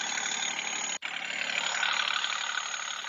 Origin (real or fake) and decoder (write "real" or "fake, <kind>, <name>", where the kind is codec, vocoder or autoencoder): real